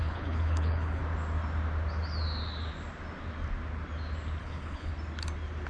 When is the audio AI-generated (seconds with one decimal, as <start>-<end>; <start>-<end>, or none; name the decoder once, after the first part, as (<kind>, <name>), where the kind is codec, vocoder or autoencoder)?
0.0-1.0 (codec, HILCodec); 4.4-4.9